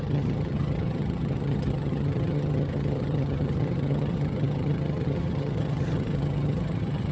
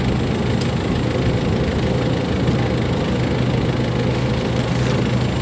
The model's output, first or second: first